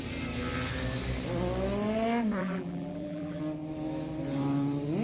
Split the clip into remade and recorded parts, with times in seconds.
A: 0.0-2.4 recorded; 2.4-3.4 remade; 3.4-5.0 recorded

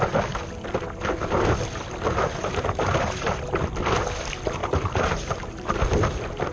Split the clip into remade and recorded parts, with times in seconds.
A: 0.0-2.2 recorded; 2.2-3.5 remade; 3.5-4.6 recorded; 4.6-5.8 remade; 5.8-6.5 recorded

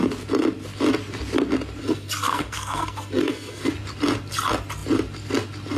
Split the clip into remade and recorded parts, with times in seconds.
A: 0.0-1.8 recorded; 1.8-3.7 remade; 3.7-5.8 recorded

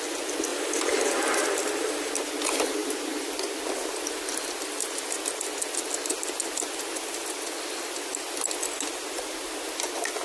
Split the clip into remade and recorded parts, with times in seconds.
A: 0.0-0.5 recorded; 0.5-2.1 remade; 2.1-10.2 recorded

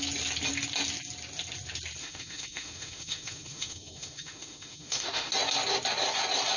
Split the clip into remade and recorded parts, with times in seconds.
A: 0.0-2.0 recorded; 2.0-5.3 remade; 5.3-6.6 recorded

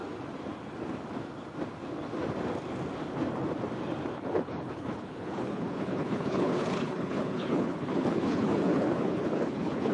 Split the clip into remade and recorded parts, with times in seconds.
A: 0.0-4.1 recorded; 4.1-9.9 remade

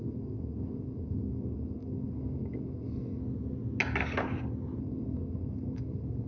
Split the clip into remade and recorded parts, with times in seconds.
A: 0.0-3.2 remade; 3.2-4.8 recorded; 4.8-6.3 remade